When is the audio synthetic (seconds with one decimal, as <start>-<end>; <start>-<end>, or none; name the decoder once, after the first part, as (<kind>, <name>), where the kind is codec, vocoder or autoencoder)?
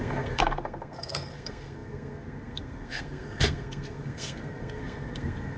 0.0-5.6 (codec, SNAC)